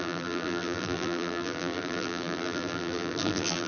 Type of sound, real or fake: fake